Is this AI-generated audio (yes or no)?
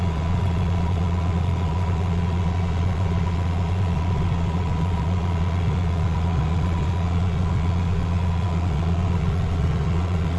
yes